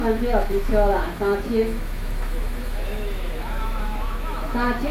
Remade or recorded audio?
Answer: remade